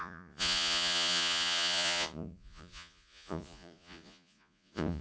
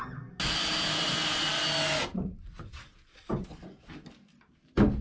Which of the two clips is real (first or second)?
second